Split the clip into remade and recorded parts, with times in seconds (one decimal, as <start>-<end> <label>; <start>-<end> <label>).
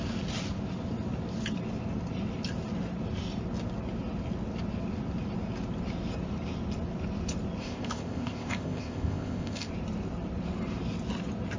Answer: 0.0-7.6 recorded; 7.6-9.7 remade; 9.7-11.6 recorded